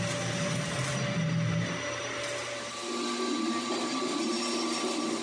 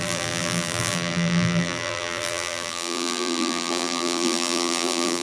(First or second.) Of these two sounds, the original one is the first